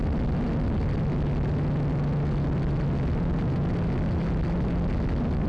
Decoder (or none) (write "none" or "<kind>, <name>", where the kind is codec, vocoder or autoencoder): none